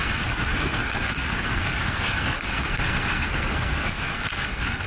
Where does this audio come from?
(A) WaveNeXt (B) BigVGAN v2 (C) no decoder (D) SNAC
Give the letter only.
D